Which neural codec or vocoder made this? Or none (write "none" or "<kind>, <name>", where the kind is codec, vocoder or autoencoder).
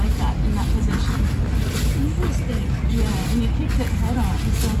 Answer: none